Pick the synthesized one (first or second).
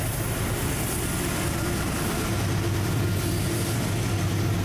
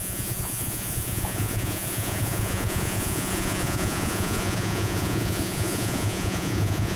second